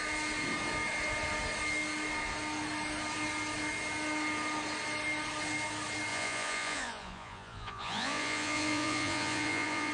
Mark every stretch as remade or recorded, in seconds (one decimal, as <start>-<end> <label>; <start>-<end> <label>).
0.0-6.1 recorded; 6.1-9.9 remade